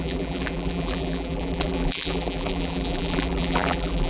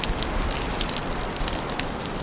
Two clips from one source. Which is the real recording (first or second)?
second